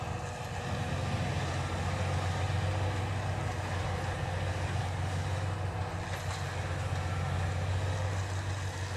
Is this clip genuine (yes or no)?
yes